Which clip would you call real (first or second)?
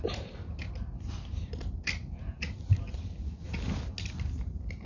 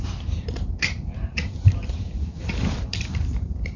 first